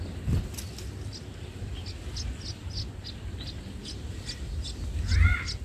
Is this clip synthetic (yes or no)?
no